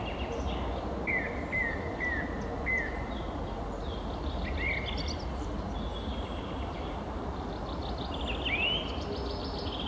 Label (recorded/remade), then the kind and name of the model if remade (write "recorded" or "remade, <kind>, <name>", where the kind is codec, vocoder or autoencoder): recorded